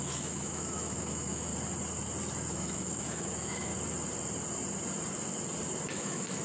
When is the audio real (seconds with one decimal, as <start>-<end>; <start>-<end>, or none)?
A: 1.5-2.5; 3.7-5.9